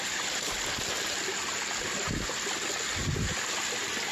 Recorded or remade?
recorded